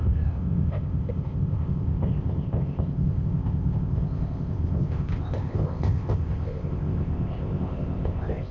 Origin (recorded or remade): remade